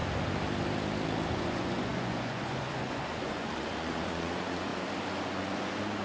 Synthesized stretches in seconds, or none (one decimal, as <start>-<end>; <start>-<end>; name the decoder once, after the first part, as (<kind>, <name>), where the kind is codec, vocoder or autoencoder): 1.3-4.7 (vocoder, Vocos); 5.2-6.0